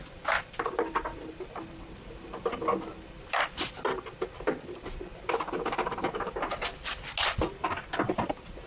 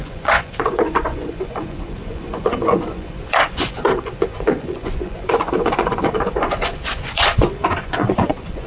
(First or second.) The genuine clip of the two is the first